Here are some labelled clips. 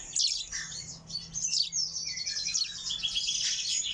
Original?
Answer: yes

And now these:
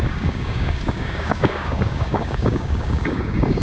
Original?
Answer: no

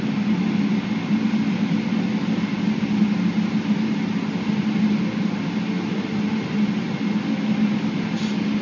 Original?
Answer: yes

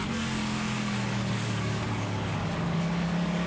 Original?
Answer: no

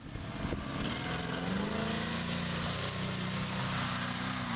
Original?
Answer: yes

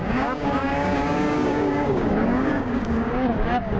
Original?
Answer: no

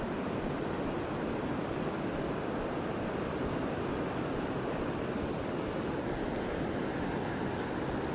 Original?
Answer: yes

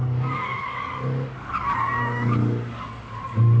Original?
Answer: no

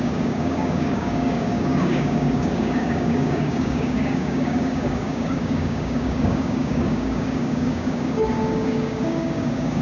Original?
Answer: no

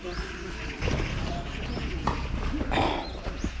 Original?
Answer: yes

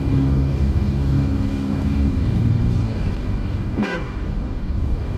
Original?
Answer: no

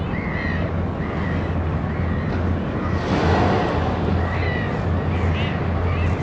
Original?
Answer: yes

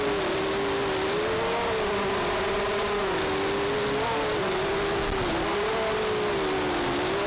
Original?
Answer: yes